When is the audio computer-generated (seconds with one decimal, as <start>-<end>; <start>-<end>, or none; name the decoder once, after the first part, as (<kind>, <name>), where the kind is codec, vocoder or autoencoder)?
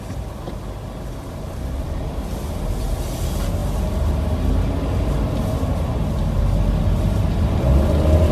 none